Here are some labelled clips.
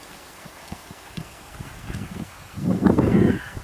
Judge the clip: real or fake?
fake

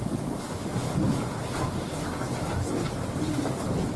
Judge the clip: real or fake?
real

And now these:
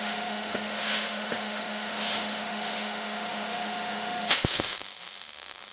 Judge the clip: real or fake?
fake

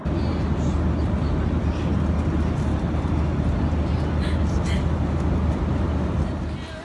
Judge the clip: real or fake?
real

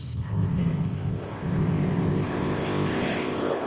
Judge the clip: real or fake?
fake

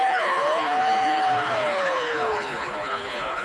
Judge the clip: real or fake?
fake